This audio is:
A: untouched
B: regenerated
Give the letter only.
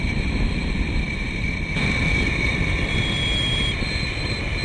B